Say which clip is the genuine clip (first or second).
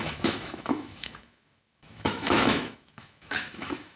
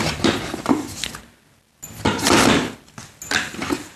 second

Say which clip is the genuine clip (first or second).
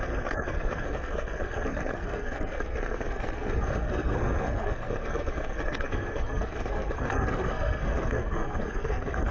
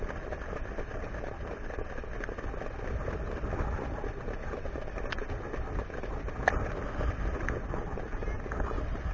second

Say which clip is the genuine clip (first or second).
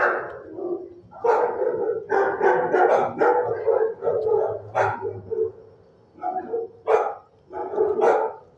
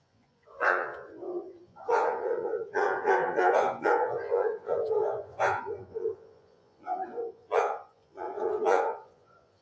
first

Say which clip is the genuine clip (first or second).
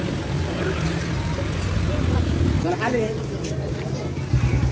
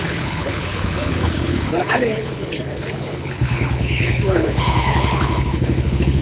first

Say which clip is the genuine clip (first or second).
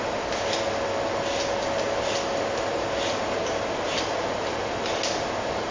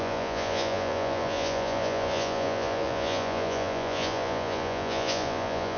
first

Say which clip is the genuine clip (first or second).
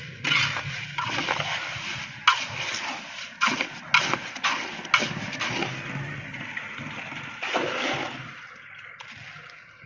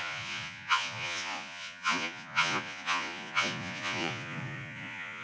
first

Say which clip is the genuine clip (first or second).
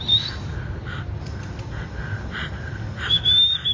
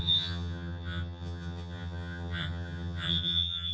first